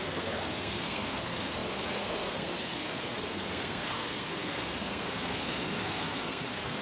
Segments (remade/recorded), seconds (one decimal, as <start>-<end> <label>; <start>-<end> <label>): 0.0-6.8 remade